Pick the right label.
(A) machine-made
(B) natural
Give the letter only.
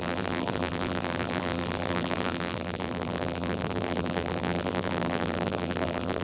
A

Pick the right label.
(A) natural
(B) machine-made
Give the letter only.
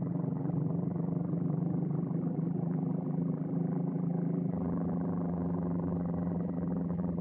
B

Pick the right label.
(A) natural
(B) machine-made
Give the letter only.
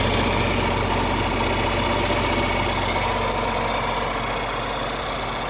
A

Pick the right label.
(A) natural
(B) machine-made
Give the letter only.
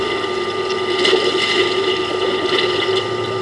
A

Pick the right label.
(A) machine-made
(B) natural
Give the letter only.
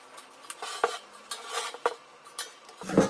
B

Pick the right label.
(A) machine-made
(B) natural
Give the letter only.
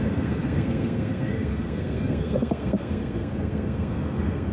A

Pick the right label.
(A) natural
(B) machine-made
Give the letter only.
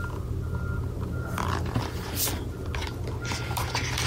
A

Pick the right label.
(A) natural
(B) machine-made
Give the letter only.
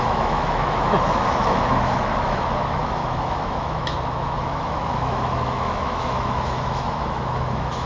B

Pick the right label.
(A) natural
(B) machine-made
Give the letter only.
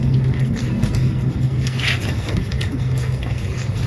B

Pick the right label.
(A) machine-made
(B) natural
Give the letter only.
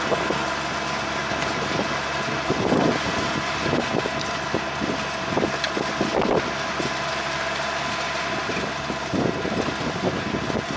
B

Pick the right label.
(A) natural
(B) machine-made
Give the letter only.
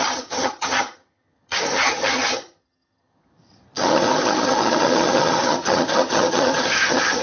B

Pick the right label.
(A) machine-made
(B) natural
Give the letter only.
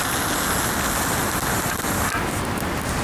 B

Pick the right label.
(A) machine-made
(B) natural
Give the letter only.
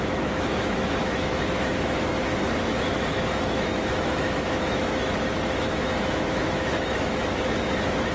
A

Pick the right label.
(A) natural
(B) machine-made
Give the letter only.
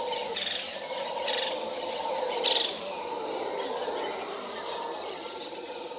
A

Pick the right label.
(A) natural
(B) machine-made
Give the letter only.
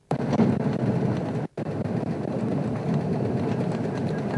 A